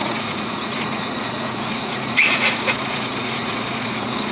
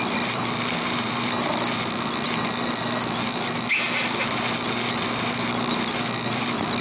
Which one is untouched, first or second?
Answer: second